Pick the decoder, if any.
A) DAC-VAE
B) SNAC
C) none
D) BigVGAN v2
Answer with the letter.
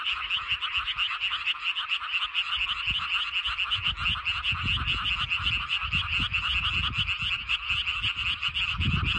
C